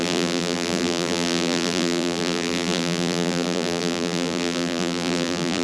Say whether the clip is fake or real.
fake